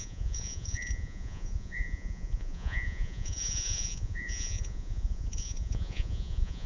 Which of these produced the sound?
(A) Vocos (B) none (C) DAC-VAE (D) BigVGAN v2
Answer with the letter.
A